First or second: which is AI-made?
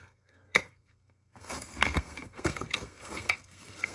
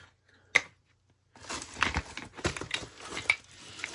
first